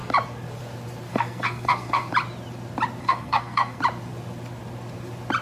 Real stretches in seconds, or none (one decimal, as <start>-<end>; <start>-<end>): 0.0-1.1; 2.1-3.0; 3.8-5.4